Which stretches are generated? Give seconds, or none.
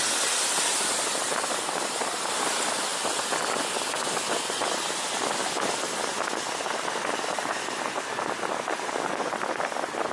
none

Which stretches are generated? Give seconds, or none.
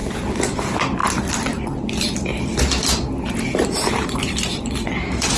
none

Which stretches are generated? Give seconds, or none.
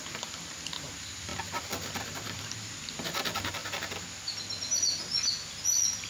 none